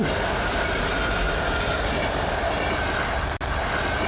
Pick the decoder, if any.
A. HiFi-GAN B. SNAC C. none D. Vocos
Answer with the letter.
C